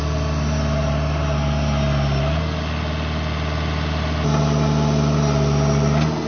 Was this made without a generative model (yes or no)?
yes